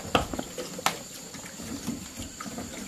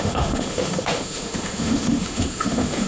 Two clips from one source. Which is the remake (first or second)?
second